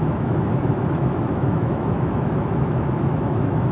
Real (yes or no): no